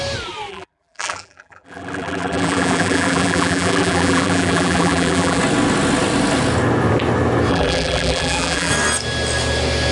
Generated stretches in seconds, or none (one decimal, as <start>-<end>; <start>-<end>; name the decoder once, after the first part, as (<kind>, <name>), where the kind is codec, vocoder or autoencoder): 0.5-5.4 (vocoder, BigVGAN v2); 7.5-8.7

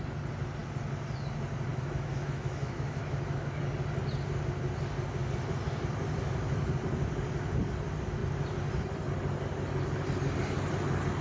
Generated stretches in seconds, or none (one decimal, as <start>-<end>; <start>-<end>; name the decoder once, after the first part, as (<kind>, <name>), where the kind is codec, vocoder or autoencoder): 1.7-3.6 (autoencoder, DAC-VAE)

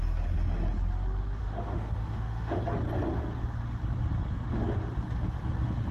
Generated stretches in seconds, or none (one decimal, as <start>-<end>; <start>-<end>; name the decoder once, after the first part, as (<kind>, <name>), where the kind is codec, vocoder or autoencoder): 1.4-2.6 (autoencoder, DAC-VAE)